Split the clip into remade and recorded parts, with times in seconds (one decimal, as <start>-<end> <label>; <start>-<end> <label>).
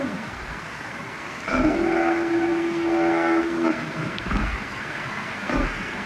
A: 0.0-6.1 remade